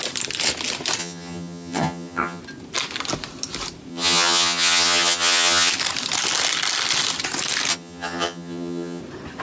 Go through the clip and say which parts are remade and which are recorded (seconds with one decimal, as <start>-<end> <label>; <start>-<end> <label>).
0.0-1.0 recorded; 1.0-2.4 remade; 2.4-3.9 recorded; 3.9-5.7 remade; 5.7-7.7 recorded; 7.7-9.0 remade; 9.0-9.4 recorded